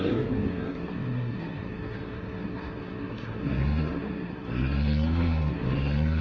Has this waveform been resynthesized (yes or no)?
yes